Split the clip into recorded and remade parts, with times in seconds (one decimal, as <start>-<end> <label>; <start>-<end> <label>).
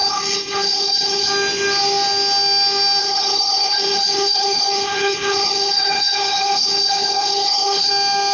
0.0-1.3 remade; 1.3-3.0 recorded; 3.0-7.9 remade; 7.9-8.3 recorded